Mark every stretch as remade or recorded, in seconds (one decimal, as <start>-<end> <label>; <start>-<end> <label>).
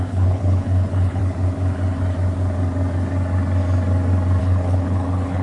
0.0-1.2 remade; 1.2-4.4 recorded; 4.4-5.4 remade